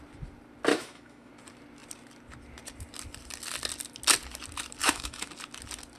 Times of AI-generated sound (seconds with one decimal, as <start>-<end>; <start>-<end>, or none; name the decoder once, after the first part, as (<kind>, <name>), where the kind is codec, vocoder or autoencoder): 0.7-1.3 (autoencoder, DAC-VAE); 4.8-5.3